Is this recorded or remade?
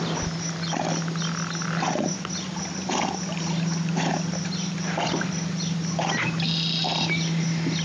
recorded